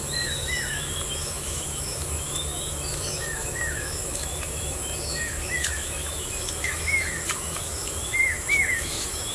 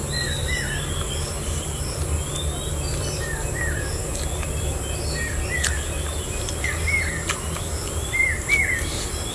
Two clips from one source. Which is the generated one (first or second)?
first